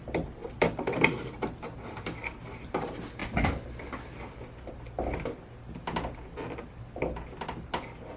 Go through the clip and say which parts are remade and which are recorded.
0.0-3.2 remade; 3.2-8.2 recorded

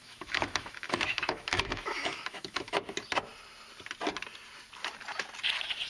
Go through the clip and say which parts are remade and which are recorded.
0.0-2.8 remade; 2.8-5.9 recorded

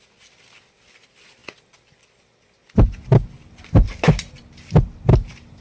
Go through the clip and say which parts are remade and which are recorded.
0.0-5.6 recorded

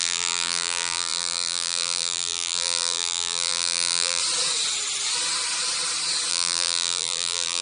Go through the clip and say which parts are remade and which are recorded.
0.0-4.2 remade; 4.2-6.3 recorded; 6.3-7.6 remade

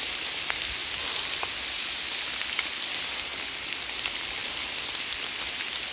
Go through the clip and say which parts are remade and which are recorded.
0.0-0.8 recorded; 0.8-2.0 remade; 2.0-4.4 recorded; 4.4-5.1 remade; 5.1-5.9 recorded

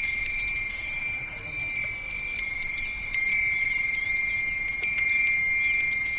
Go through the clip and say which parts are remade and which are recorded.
0.0-0.7 recorded; 0.7-1.7 remade; 1.7-6.2 recorded

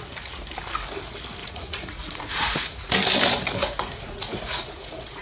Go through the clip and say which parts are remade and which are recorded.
0.0-1.4 recorded; 1.4-2.9 remade; 2.9-3.6 recorded; 3.6-5.2 remade